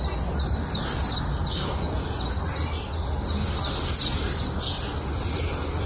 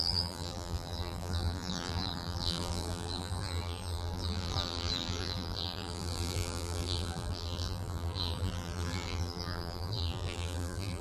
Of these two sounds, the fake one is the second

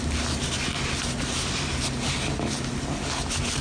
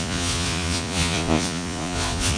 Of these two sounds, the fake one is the second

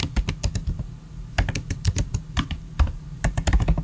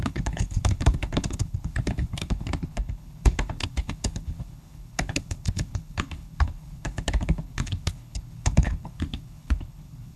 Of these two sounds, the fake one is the second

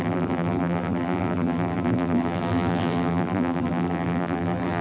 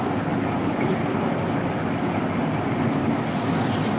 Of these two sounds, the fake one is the first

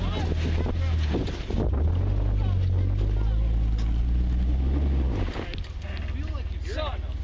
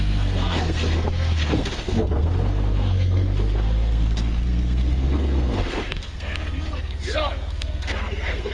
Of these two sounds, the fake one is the second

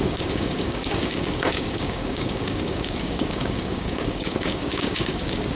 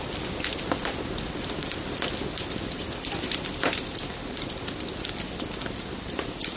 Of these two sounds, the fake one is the first